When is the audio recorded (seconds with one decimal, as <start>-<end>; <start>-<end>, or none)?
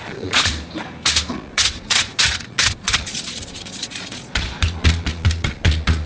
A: 0.5-1.3